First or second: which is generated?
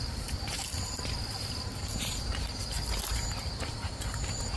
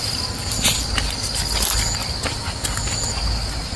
first